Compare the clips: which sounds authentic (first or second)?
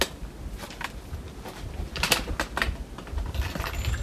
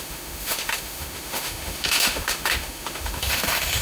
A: first